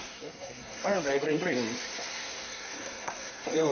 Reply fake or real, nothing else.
fake